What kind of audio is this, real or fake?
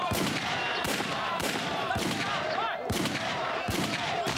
fake